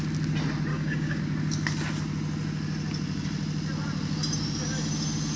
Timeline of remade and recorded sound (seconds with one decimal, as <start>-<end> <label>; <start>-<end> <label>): 0.0-0.7 recorded; 0.7-1.2 remade; 1.2-5.4 recorded